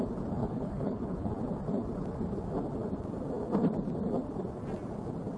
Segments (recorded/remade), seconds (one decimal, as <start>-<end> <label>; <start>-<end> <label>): 0.0-0.4 recorded; 0.4-1.3 remade; 1.3-5.4 recorded